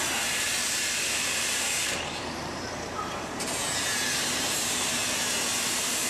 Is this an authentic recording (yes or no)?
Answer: no